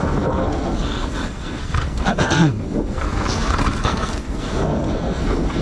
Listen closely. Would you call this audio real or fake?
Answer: fake